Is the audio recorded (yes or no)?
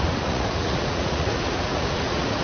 no